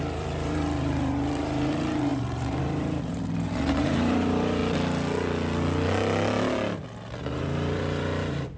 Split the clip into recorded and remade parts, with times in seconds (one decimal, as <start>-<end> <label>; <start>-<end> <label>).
0.0-4.6 remade; 4.6-7.2 recorded; 7.2-8.6 remade